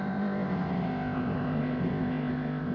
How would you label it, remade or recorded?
remade